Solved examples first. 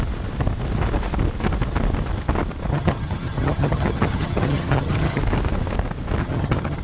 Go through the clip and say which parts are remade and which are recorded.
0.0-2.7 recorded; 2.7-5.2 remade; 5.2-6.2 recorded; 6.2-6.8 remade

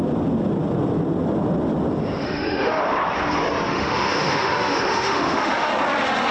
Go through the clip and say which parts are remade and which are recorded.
0.0-2.2 recorded; 2.2-2.8 remade; 2.8-3.7 recorded; 3.7-5.7 remade; 5.7-6.3 recorded